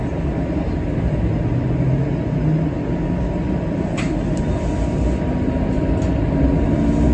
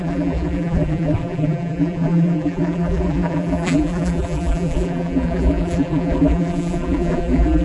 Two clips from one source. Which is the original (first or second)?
first